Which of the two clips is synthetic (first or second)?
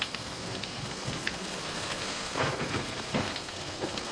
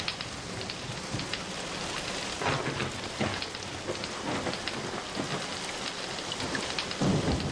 first